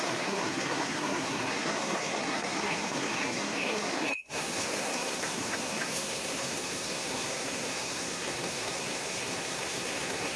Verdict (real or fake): fake